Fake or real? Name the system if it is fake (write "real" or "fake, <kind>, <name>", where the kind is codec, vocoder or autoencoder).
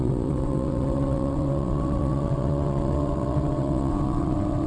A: fake, vocoder, WaveNeXt